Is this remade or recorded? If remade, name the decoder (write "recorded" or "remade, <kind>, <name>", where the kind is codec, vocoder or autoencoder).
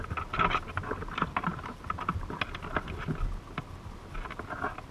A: recorded